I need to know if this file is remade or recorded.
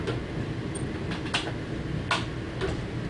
recorded